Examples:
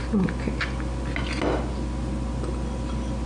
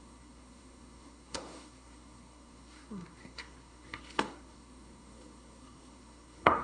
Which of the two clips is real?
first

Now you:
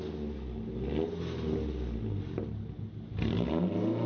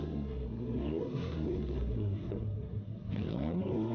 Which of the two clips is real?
first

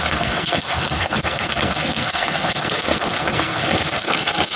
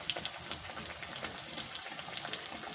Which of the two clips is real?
second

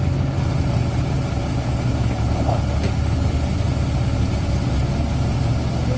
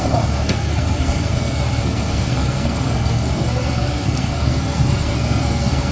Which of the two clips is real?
first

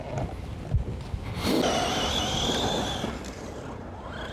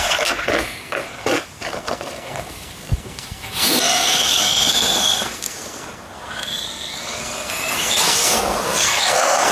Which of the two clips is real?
first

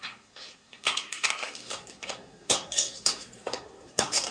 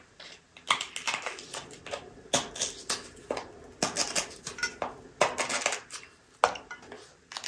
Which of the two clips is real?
second